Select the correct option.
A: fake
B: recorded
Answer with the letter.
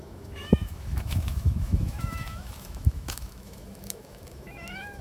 A